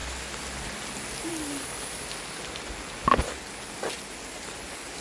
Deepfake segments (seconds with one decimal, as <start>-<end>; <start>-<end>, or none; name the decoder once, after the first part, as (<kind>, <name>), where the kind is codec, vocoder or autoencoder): none